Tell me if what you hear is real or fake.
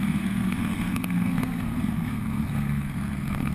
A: fake